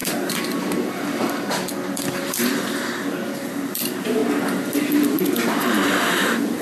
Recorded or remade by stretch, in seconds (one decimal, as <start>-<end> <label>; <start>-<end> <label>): 0.0-4.2 remade; 4.2-5.2 recorded; 5.2-6.6 remade